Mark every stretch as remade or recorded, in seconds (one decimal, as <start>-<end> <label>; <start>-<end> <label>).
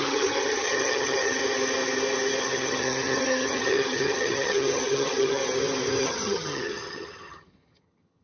0.0-1.4 remade; 1.4-2.4 recorded; 2.4-5.4 remade; 5.4-6.0 recorded; 6.0-8.2 remade